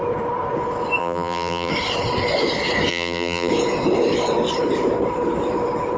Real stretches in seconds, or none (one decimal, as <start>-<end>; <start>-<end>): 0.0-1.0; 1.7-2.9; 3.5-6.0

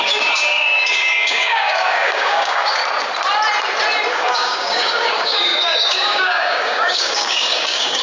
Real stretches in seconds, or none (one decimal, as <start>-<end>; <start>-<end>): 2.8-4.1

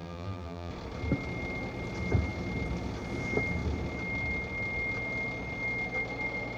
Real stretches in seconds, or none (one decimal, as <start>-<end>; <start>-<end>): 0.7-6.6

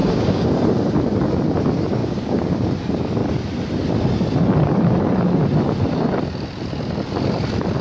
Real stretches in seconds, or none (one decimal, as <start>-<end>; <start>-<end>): 0.5-2.0; 2.7-7.8

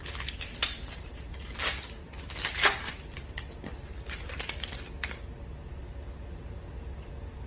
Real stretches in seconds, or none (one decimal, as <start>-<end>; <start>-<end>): 0.0-7.5

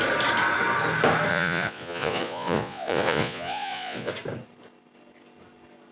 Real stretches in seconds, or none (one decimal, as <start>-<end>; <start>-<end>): 0.0-1.3; 4.1-5.9